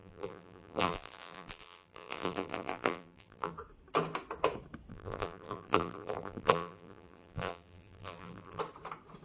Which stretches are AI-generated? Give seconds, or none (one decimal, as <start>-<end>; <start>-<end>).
0.0-3.5; 4.9-8.6